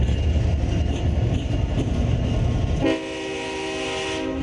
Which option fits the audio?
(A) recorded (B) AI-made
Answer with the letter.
A